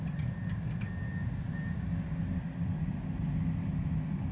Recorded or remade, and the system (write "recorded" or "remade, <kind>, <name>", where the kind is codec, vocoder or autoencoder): recorded